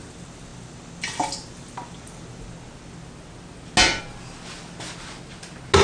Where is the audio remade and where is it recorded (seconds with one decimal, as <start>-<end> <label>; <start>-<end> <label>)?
0.0-5.8 recorded